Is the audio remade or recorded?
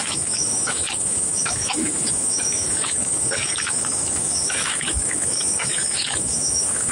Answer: remade